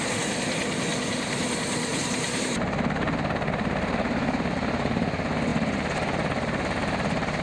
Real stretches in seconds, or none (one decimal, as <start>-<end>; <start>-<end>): 0.0-1.9; 5.0-5.5